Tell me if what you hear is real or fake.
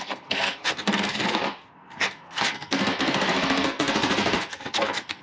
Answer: fake